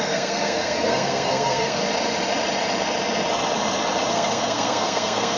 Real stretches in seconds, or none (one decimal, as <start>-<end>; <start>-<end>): 1.8-4.1